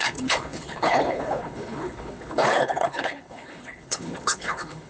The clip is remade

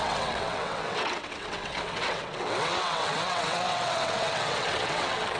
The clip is remade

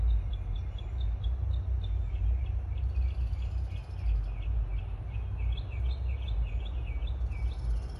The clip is recorded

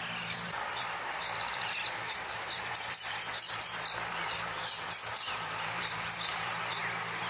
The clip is remade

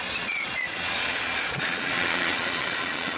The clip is remade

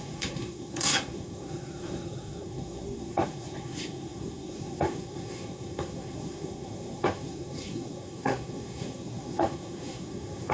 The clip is remade